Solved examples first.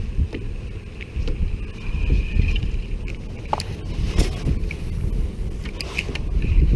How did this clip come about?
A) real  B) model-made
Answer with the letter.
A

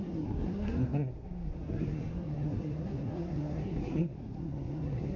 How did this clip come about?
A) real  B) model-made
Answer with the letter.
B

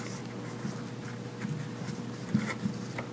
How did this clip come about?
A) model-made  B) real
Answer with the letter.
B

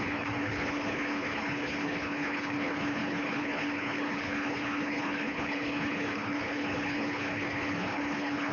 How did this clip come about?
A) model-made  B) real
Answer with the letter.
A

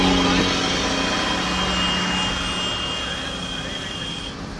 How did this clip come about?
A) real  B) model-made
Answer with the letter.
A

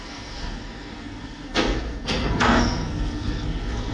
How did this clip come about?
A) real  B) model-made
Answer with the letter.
B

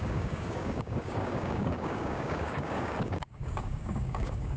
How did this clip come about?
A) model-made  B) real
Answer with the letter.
A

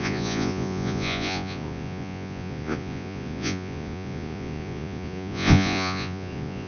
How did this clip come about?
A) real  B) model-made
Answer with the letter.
B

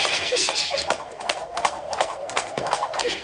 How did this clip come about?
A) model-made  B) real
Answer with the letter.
A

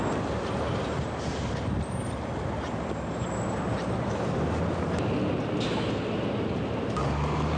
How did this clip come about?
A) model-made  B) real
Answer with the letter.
B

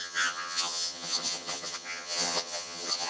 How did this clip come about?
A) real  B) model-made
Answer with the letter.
B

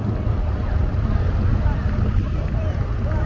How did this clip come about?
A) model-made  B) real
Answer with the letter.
B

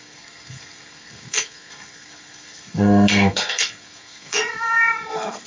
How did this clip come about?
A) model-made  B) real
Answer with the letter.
A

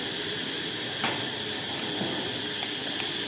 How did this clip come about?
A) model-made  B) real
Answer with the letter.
B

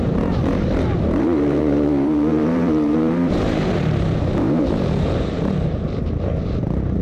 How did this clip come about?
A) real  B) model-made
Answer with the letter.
B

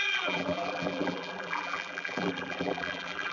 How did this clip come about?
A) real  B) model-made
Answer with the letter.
B